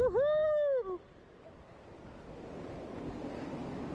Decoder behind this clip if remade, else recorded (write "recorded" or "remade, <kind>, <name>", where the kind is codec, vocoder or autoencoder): recorded